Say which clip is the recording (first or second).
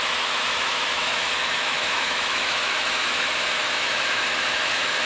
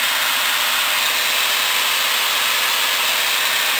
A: second